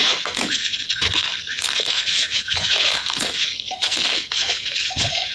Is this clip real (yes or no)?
no